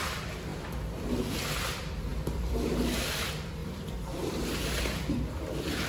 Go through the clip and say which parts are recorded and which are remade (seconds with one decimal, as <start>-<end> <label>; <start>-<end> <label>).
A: 0.0-0.5 remade; 0.5-1.7 recorded; 1.7-5.9 remade

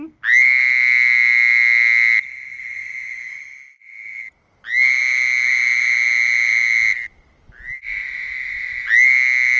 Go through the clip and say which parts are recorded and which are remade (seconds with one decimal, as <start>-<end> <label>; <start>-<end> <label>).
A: 0.0-9.6 recorded